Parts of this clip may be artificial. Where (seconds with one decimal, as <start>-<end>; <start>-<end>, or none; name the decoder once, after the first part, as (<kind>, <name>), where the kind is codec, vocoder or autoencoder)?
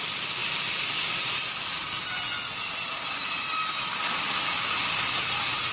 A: none